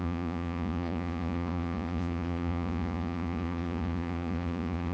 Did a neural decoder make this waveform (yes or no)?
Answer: yes